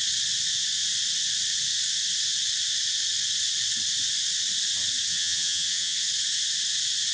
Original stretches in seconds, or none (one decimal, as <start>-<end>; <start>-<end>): 0.0-5.1; 6.1-7.1